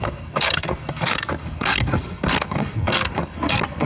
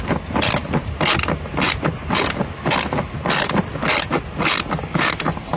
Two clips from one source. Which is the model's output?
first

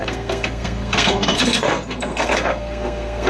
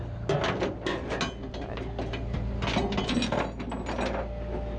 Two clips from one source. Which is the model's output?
first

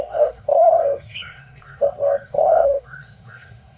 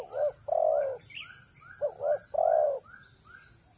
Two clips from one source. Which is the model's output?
first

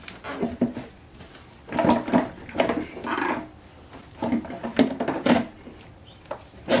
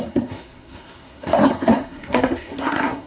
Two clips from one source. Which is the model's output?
second